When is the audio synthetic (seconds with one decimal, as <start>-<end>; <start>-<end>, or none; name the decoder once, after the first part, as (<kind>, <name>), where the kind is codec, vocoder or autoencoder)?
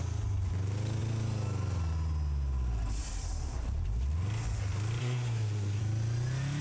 5.0-5.8 (codec, SNAC)